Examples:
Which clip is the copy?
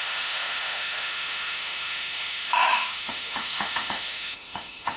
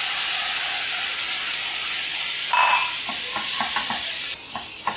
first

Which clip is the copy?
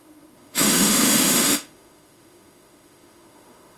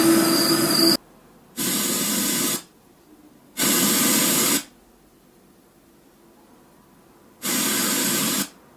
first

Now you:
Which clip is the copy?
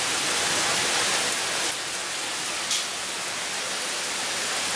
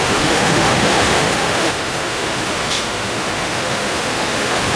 second